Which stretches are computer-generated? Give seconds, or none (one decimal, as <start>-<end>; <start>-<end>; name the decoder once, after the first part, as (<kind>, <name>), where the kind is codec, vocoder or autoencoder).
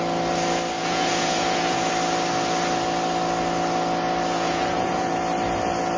0.8-1.9 (vocoder, Vocos); 4.3-5.1